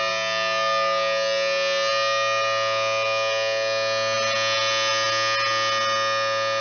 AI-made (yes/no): no